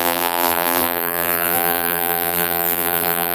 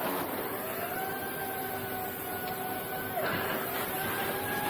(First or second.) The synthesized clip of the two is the first